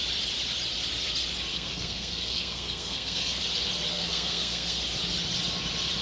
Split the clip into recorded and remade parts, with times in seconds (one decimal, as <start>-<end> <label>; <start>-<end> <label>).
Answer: 0.0-1.5 recorded; 1.5-3.4 remade; 3.4-3.9 recorded; 3.9-4.8 remade; 4.8-6.0 recorded